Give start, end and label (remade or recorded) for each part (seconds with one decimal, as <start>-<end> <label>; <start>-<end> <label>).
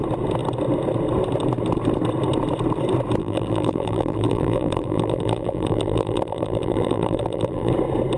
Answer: 0.0-3.2 recorded; 3.2-7.7 remade; 7.7-8.2 recorded